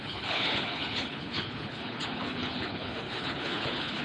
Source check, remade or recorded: remade